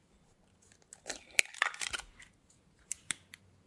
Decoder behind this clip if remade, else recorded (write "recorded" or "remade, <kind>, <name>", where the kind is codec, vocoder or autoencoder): recorded